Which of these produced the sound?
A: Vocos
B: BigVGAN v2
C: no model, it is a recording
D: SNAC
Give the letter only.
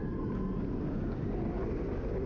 C